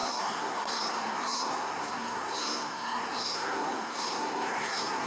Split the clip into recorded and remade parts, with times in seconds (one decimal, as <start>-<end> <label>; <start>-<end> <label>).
0.0-5.1 remade